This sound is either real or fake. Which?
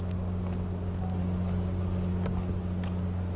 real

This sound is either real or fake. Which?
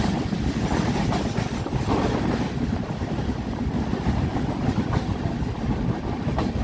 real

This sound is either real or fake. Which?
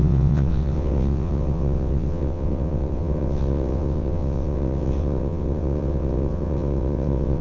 fake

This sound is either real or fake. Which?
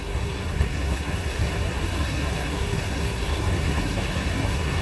fake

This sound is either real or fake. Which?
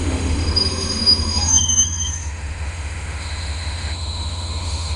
fake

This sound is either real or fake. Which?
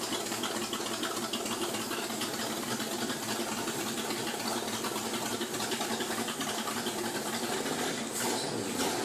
real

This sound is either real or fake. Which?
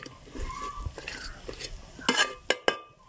real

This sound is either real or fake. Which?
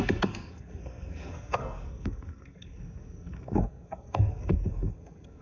fake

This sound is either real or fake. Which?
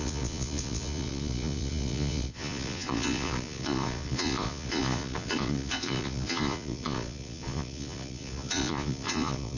fake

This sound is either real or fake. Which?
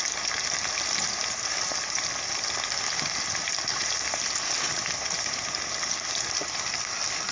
real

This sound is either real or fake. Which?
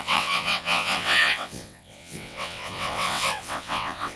fake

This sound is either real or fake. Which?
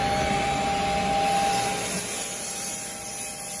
real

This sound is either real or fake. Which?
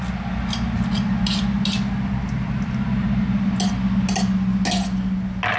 real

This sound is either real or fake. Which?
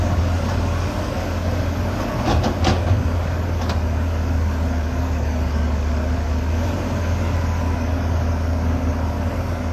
fake